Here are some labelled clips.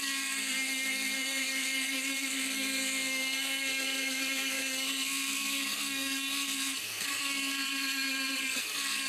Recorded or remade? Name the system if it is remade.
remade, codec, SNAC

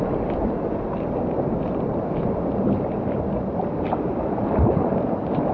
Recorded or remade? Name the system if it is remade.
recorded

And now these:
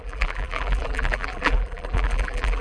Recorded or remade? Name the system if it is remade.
remade, vocoder, BigVGAN v2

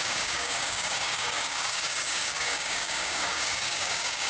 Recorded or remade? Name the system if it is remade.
remade, codec, DAC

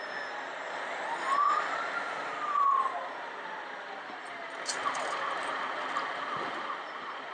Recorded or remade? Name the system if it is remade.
recorded